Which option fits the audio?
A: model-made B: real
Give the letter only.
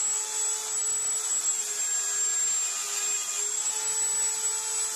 B